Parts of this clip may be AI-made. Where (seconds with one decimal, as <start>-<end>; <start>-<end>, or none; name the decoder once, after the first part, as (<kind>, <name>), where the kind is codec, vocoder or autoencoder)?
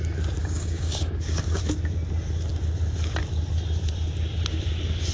0.4-1.6 (codec, DAC)